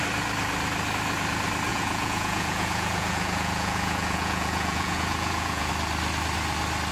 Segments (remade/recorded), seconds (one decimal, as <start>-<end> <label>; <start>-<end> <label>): 0.0-1.7 recorded; 1.7-5.7 remade; 5.7-6.9 recorded